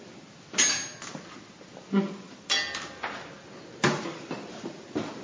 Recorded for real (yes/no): yes